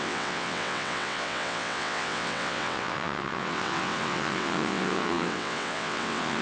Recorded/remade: remade